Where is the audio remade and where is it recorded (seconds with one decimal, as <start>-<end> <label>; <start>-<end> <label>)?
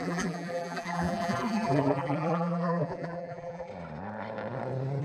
0.0-3.7 remade; 3.7-5.0 recorded